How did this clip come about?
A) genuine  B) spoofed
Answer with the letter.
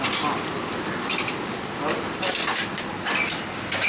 B